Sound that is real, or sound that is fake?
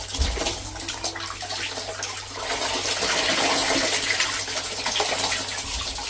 real